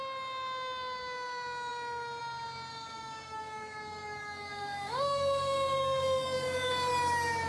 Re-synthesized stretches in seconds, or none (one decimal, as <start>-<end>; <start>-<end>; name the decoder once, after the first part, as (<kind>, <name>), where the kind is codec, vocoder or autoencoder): 2.7-6.7 (codec, DAC)